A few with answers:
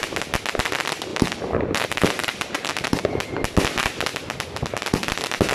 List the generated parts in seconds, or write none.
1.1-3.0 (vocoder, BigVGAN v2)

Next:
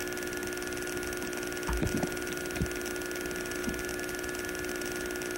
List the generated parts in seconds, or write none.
none